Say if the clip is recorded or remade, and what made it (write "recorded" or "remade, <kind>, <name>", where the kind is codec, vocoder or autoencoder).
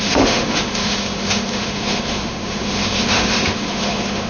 remade, autoencoder, DAC-VAE